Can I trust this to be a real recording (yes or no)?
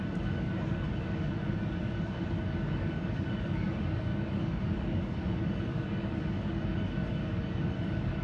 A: no